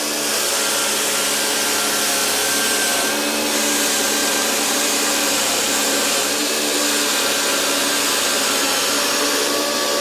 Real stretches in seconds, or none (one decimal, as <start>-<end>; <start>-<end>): 0.0-4.2; 6.5-10.0